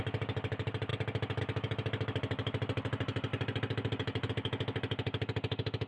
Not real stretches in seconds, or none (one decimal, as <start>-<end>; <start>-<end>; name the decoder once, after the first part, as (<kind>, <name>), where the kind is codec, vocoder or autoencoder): none

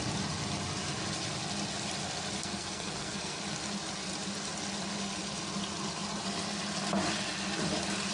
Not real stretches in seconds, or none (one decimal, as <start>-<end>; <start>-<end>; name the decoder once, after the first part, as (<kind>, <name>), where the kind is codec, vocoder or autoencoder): 2.4-3.4 (codec, SNAC)

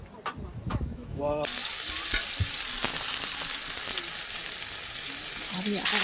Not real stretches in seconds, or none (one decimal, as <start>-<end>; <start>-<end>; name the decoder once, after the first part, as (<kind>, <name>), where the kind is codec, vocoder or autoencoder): 0.7-1.2 (autoencoder, DAC-VAE)

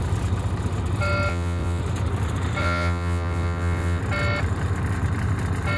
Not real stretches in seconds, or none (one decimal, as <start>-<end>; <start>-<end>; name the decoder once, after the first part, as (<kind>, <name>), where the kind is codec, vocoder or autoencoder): 1.3-1.8 (vocoder, WaveNeXt); 2.6-4.0

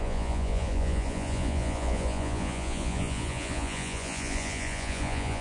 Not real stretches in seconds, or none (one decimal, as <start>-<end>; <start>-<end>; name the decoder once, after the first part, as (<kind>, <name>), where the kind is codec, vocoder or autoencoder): 0.0-5.4 (vocoder, Vocos)